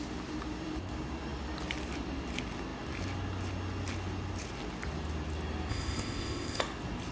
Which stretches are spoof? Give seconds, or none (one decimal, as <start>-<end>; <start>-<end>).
5.7-6.6